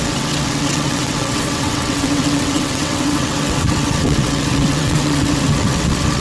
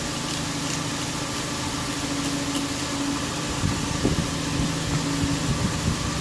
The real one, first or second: second